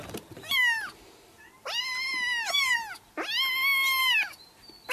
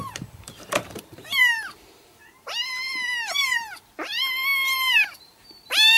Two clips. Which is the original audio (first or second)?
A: first